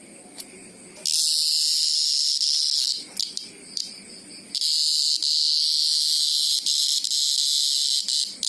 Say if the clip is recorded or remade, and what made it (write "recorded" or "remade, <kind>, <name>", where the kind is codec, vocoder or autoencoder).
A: recorded